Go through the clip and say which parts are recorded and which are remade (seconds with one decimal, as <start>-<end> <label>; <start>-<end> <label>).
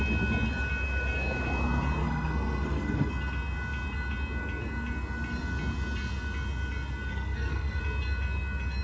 0.0-2.0 recorded; 2.0-3.1 remade; 3.1-7.1 recorded; 7.1-7.8 remade; 7.8-8.8 recorded